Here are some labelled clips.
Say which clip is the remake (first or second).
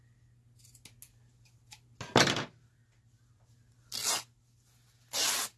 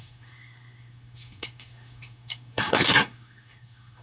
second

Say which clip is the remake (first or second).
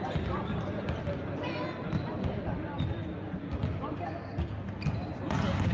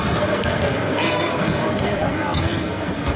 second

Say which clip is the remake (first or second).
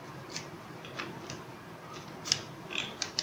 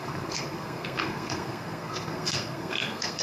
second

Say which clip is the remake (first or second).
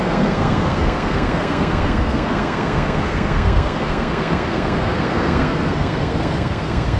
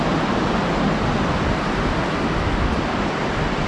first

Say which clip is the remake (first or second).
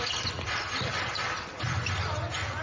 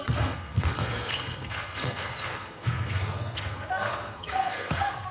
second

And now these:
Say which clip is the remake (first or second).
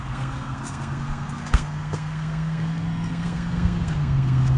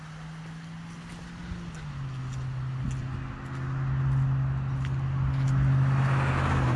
first